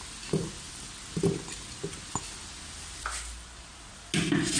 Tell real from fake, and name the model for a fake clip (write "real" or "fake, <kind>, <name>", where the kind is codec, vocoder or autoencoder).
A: real